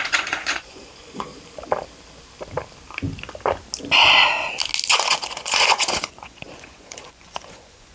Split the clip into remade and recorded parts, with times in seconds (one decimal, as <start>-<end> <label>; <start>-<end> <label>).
0.0-1.3 remade; 1.3-4.9 recorded; 4.9-7.9 remade